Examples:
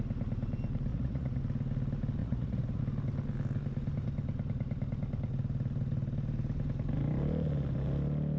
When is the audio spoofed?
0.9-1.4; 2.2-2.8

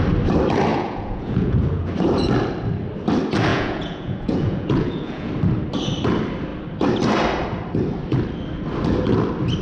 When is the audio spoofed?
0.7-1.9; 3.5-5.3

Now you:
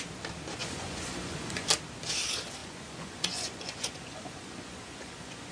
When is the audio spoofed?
0.6-1.7; 2.6-5.5